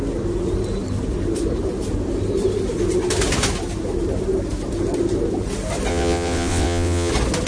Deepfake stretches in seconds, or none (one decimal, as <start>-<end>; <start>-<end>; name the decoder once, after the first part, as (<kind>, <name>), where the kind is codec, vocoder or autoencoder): 5.9-7.1 (vocoder, WaveNeXt)